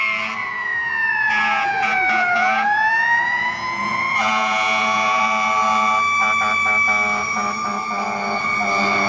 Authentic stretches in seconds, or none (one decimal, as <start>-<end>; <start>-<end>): 0.0-0.4; 5.2-9.1